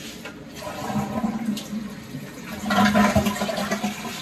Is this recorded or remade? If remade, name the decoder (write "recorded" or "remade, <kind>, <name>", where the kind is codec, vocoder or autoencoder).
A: recorded